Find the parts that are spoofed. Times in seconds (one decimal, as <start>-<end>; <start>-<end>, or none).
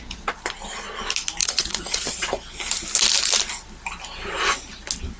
1.4-2.3